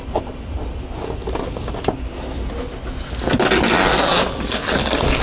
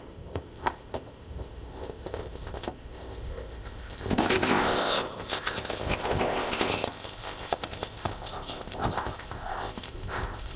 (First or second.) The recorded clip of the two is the first